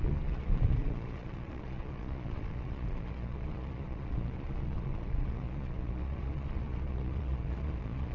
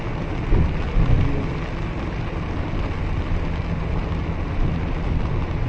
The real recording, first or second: second